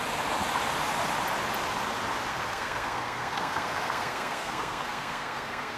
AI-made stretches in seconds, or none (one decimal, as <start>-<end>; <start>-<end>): 2.3-5.8